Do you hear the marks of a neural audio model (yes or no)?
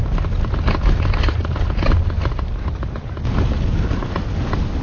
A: no